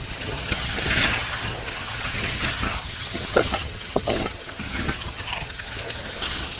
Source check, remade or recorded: remade